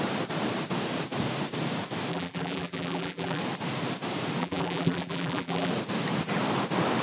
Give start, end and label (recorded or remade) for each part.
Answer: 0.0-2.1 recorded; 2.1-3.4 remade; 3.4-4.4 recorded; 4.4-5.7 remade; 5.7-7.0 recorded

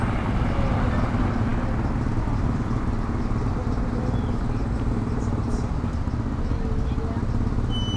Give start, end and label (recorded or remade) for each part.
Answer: 0.0-4.6 recorded; 4.6-5.7 remade; 5.7-8.0 recorded

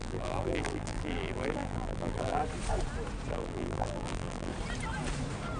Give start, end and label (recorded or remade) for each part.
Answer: 0.0-2.4 remade; 2.4-3.3 recorded; 3.3-4.5 remade; 4.5-5.6 recorded